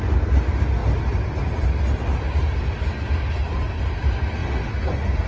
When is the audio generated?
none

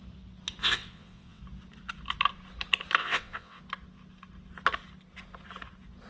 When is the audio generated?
0.6-1.4 (vocoder, WaveNeXt); 3.0-3.6

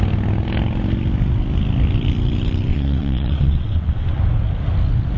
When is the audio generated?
2.7-4.2 (vocoder, WaveNeXt)

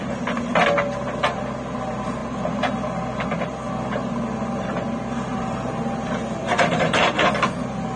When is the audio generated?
none